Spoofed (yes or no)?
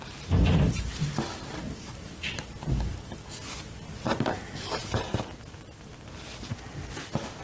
no